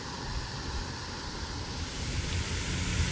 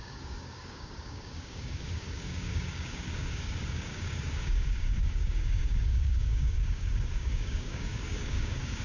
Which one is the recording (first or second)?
first